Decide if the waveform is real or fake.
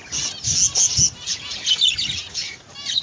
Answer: real